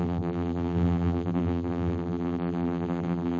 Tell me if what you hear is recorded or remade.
remade